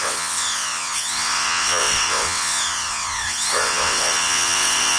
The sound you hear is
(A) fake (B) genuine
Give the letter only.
A